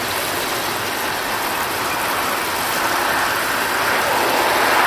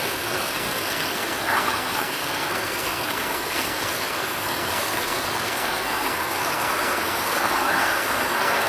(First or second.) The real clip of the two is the first